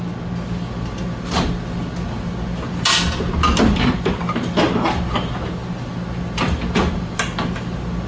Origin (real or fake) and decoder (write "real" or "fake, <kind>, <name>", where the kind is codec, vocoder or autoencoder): real